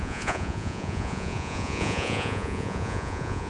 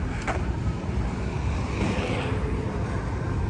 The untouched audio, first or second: second